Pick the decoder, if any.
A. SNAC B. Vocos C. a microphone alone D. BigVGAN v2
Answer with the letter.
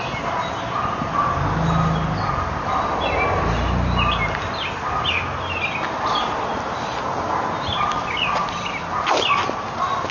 C